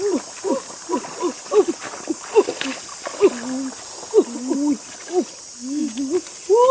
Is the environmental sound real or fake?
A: real